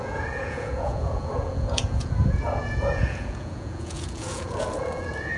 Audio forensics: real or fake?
fake